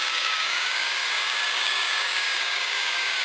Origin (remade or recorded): remade